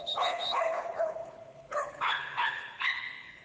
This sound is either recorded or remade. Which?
remade